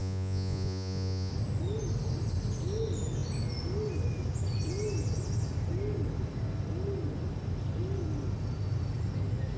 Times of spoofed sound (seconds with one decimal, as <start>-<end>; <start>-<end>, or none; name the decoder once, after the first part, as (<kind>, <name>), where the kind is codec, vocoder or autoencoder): 0.0-1.3 (vocoder, Vocos)